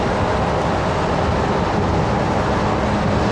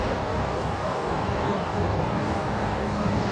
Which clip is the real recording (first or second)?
first